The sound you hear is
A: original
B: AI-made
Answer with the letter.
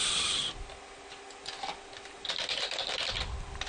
A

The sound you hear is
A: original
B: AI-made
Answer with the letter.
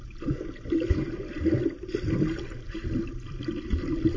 A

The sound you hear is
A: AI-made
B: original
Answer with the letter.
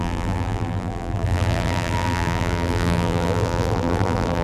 A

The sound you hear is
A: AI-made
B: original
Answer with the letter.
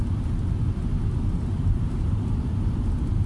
B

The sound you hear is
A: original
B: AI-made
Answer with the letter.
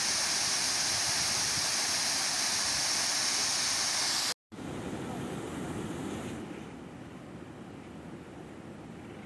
A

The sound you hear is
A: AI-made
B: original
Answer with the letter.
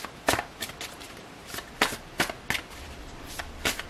B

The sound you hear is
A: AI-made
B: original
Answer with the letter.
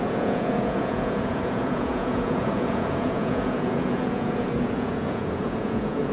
A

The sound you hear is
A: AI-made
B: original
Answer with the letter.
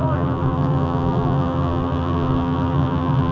A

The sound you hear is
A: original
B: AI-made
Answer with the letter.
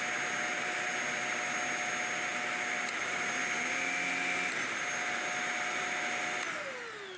A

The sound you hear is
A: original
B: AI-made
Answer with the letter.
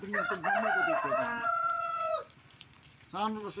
B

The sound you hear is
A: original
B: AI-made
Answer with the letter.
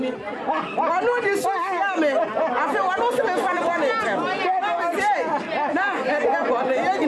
A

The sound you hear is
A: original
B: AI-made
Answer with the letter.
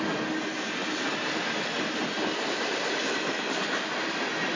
A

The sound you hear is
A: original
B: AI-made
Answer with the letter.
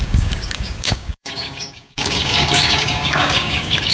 B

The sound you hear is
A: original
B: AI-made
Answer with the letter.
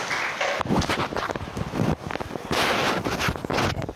A